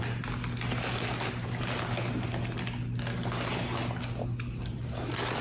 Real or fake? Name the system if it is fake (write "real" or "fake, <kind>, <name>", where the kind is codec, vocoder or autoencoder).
real